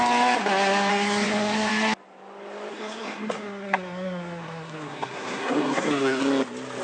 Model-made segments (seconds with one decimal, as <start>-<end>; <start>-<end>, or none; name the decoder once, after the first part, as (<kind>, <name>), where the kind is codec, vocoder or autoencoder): 0.9-1.7 (codec, SNAC); 2.7-6.2